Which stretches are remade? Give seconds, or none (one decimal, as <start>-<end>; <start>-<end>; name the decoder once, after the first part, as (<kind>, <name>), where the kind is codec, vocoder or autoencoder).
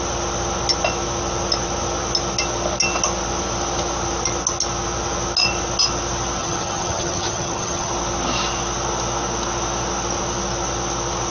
6.4-7.9 (vocoder, HiFi-GAN)